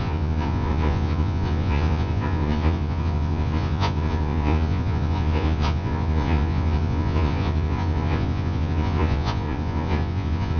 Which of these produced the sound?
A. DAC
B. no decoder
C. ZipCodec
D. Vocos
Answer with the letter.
D